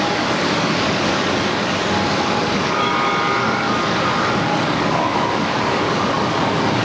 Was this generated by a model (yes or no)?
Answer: yes